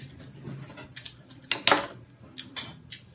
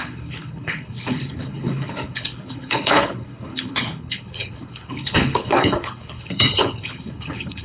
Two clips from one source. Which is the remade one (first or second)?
second